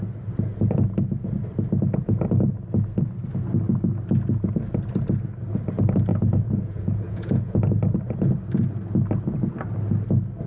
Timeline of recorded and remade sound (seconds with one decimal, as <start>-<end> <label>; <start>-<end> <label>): 0.0-6.1 recorded; 6.1-7.6 remade; 7.6-10.5 recorded